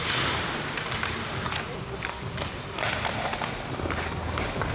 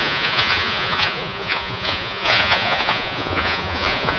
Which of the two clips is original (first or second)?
first